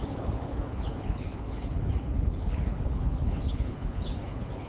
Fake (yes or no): yes